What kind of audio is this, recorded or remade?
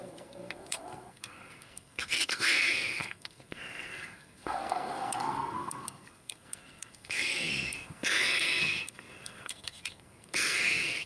remade